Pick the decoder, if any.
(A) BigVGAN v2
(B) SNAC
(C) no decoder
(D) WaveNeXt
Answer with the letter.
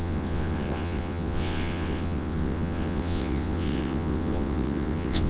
D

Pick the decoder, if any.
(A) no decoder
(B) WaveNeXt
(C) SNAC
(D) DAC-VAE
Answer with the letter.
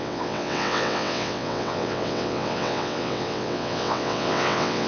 B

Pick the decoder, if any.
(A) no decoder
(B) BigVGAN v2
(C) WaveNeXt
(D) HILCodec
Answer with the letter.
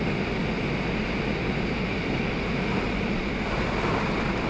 A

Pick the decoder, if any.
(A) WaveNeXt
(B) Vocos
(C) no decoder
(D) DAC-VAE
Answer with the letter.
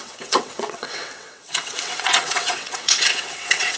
A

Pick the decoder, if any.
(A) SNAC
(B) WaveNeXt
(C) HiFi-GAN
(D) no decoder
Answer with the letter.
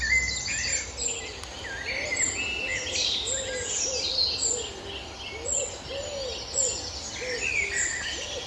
D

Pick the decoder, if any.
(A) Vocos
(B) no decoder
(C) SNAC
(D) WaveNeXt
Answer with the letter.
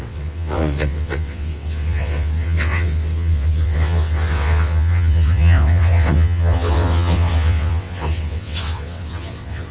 D